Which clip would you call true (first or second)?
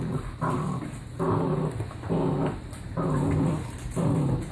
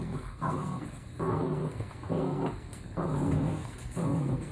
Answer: first